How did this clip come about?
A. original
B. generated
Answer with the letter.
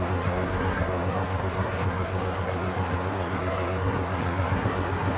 B